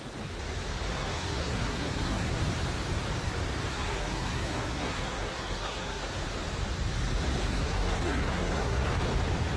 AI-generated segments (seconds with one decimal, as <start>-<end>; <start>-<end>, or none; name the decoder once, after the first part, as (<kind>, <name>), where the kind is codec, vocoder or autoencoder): 0.9-2.4 (codec, SNAC); 3.7-6.0; 7.4-8.9